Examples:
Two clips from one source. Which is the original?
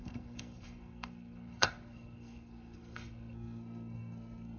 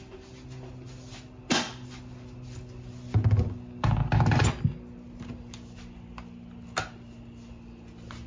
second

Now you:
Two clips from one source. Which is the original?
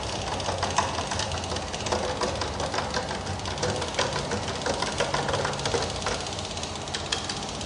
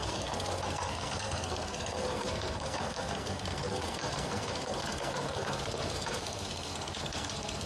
first